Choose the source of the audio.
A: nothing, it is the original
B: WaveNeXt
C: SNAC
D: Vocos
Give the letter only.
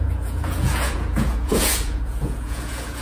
D